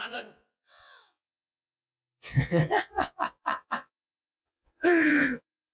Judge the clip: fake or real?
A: fake